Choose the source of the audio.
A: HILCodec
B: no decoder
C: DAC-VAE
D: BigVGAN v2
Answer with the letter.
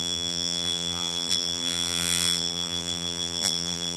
D